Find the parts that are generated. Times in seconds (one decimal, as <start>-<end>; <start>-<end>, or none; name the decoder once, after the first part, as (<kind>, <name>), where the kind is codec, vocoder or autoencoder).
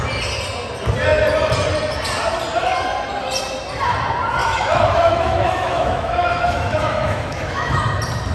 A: 4.4-7.8 (autoencoder, DAC-VAE)